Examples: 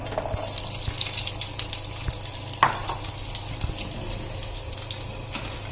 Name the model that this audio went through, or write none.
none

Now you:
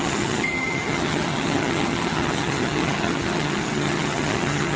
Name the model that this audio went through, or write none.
vocoder, HiFi-GAN